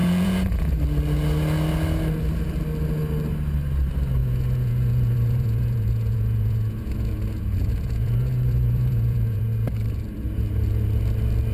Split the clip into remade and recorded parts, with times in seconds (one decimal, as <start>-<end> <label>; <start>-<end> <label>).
0.0-0.8 remade; 0.8-4.2 recorded; 4.2-9.4 remade; 9.4-11.5 recorded